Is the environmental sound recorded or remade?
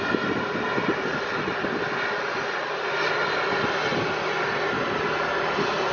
recorded